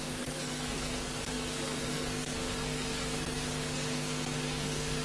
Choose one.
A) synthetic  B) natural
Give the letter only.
A